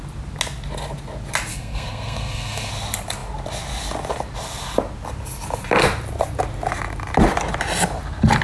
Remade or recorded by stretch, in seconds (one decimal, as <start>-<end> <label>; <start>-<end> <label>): 0.0-1.5 recorded; 1.5-2.7 remade; 2.7-8.4 recorded